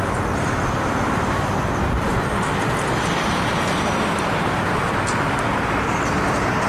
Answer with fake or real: real